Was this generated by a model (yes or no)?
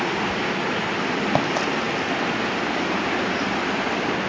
no